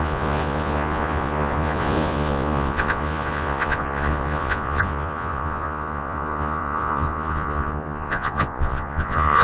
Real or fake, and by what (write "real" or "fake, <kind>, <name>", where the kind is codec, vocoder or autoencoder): fake, vocoder, Vocos